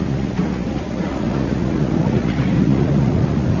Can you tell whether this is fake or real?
fake